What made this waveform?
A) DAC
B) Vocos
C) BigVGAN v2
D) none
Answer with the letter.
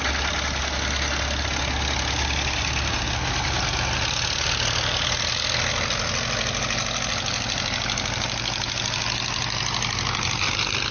D